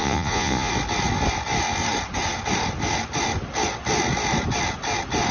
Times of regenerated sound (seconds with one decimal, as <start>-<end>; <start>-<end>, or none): 0.0-0.7